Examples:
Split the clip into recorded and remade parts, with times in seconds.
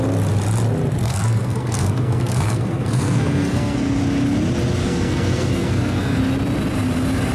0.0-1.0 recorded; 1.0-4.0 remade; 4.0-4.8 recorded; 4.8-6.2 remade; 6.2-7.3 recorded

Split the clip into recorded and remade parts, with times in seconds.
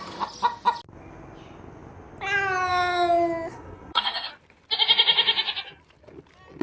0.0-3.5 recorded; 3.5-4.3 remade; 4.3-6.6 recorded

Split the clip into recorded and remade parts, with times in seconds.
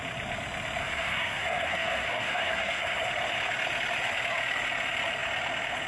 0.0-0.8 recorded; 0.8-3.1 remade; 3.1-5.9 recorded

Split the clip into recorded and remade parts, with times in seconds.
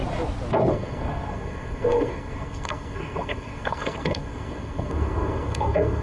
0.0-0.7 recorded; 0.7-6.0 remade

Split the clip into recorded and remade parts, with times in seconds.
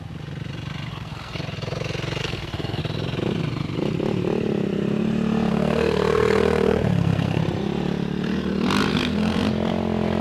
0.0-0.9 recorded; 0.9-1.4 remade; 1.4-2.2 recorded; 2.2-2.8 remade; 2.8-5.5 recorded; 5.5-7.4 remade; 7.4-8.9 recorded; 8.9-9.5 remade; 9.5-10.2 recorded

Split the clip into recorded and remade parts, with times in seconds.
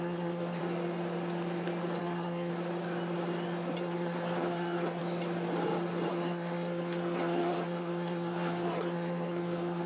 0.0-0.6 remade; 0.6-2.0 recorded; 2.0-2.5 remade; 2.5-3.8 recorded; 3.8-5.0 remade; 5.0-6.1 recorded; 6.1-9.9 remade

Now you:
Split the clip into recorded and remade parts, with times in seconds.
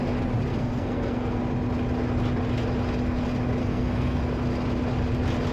0.0-0.5 recorded; 0.5-1.4 remade; 1.4-3.6 recorded; 3.6-4.2 remade; 4.2-5.5 recorded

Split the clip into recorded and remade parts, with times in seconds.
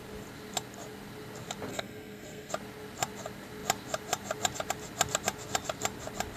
0.0-1.7 recorded; 1.7-2.5 remade; 2.5-6.4 recorded